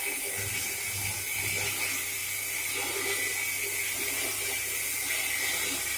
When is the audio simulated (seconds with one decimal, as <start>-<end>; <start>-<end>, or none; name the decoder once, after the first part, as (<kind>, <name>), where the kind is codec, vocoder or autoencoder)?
none